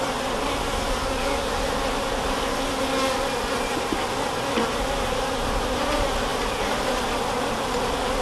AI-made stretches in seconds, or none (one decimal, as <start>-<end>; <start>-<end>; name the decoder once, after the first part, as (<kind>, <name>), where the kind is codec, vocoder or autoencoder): none